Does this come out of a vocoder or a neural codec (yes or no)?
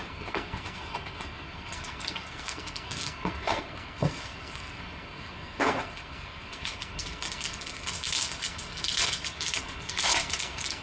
yes